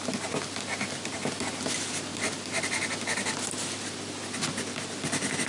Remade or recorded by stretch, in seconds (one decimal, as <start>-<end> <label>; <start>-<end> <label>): 0.0-5.5 recorded